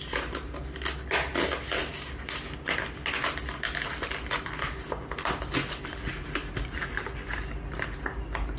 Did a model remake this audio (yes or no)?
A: no